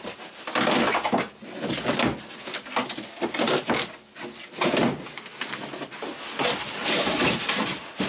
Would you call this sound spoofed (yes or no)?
no